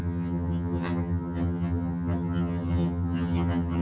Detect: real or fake fake